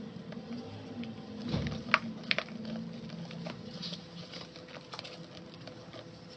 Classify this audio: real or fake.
real